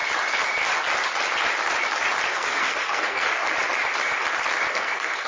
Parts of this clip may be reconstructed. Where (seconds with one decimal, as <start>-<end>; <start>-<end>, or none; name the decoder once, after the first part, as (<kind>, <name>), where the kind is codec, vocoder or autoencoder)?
2.3-3.4 (codec, SNAC); 4.7-5.3